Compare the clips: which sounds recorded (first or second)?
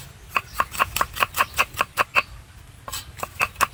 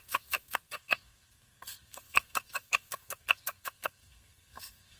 first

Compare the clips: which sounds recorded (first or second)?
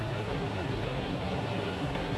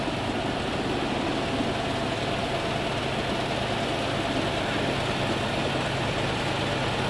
second